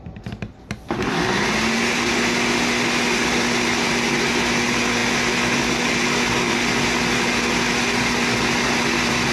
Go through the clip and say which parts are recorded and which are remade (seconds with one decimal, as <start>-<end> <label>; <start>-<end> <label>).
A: 0.0-9.3 recorded